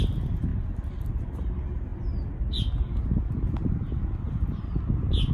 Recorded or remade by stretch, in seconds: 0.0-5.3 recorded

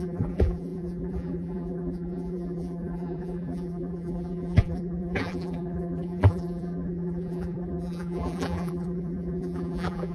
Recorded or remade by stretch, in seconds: 0.0-10.1 remade

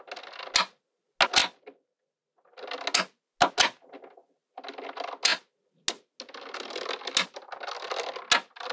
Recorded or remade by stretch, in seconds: 0.0-8.7 recorded

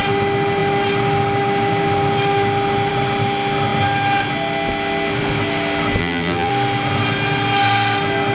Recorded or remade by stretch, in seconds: 0.0-6.0 recorded; 6.0-6.5 remade; 6.5-8.3 recorded

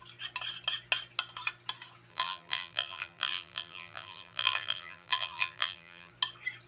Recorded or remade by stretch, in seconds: 0.0-2.1 recorded; 2.1-6.1 remade; 6.1-6.7 recorded